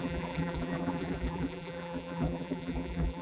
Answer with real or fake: fake